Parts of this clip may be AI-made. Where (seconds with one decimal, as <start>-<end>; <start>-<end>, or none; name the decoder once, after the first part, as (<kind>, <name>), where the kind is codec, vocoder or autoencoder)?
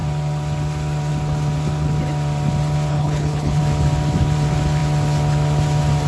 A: 2.9-3.6 (codec, HILCodec)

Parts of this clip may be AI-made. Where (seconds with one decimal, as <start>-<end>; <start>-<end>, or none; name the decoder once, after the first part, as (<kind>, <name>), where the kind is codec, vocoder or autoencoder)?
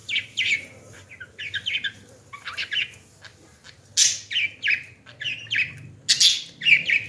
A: 0.0-1.4 (vocoder, BigVGAN v2)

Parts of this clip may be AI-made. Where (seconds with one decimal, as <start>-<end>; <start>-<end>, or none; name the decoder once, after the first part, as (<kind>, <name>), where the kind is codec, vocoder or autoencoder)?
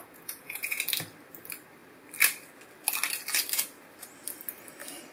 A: 0.0-0.8 (vocoder, Vocos)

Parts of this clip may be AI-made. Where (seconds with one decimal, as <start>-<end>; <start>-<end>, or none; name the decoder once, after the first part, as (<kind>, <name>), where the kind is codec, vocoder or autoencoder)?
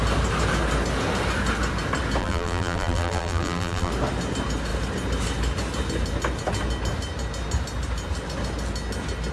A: 2.2-3.9 (vocoder, BigVGAN v2)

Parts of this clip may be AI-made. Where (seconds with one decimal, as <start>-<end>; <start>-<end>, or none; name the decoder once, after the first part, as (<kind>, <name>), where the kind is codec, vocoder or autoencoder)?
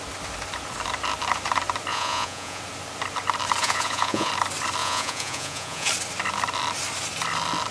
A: 1.9-2.6 (vocoder, Vocos); 3.6-4.3; 4.8-5.9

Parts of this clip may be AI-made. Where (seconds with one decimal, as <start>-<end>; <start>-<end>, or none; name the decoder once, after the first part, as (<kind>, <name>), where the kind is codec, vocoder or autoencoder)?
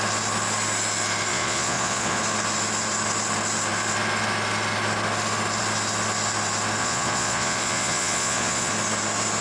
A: 1.3-2.2 (vocoder, Vocos); 6.8-8.7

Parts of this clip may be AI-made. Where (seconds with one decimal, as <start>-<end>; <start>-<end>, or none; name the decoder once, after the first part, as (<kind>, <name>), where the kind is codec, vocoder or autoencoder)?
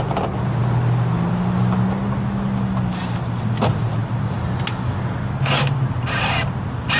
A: none